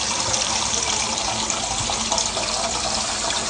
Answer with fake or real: real